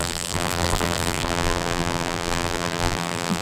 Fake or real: fake